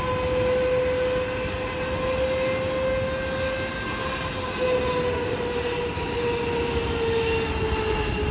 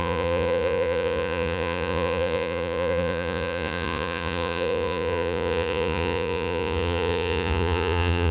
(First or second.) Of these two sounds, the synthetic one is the second